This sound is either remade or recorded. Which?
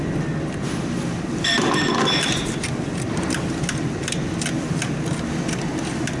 recorded